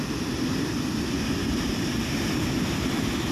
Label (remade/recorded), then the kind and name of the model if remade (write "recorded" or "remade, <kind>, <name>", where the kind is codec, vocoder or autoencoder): recorded